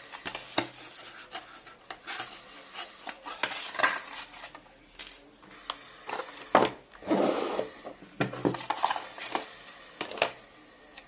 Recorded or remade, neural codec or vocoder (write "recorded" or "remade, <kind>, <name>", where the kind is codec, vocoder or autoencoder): recorded